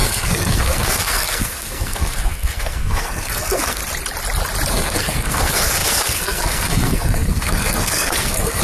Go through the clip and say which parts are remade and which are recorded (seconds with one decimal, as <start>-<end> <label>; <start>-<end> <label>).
0.0-3.8 remade; 3.8-4.7 recorded; 4.7-8.6 remade